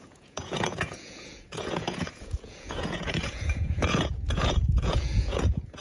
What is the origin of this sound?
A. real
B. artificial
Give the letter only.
B